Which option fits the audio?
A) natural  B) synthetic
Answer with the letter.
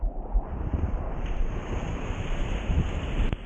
A